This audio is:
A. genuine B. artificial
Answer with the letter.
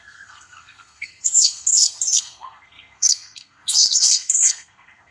B